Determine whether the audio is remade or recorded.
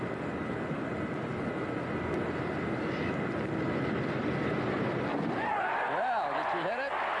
recorded